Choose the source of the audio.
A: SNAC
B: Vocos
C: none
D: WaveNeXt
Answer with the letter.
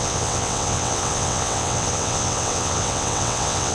D